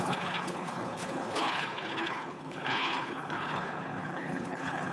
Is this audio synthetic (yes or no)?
yes